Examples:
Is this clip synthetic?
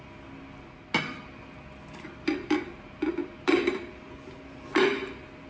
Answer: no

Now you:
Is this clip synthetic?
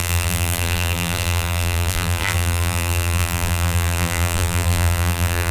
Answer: yes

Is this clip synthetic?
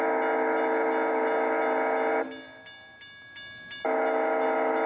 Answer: no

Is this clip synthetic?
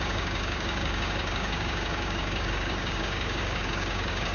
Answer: yes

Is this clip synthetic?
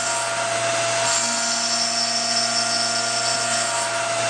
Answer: no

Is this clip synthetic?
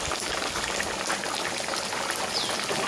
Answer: no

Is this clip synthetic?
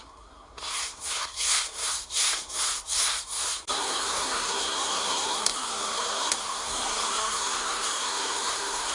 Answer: yes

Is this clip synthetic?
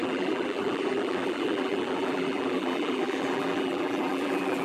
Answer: yes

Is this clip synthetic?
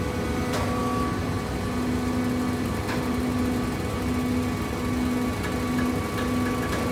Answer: no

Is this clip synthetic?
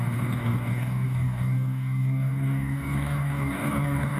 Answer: yes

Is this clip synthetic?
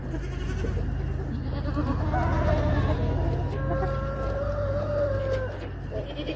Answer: no